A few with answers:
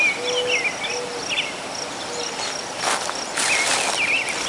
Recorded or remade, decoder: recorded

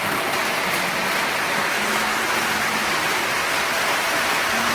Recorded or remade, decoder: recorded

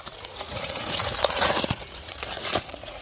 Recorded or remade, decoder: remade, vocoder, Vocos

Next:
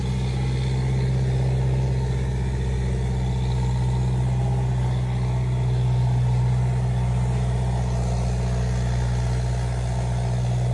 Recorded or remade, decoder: recorded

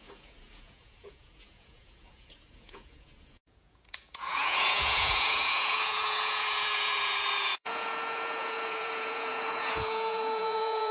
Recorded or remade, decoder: remade, vocoder, Vocos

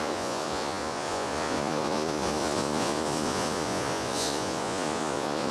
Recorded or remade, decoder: remade, vocoder, Vocos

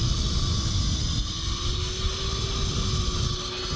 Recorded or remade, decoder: recorded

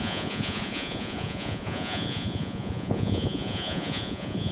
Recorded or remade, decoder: remade, vocoder, Vocos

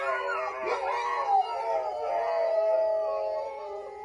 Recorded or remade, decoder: recorded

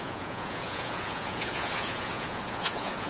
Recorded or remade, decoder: remade, vocoder, Vocos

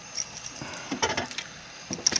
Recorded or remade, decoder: recorded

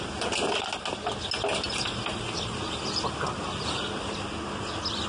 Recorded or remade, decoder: recorded